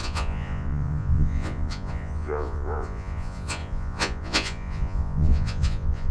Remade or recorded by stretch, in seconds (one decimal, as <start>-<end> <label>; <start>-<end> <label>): 0.0-6.1 remade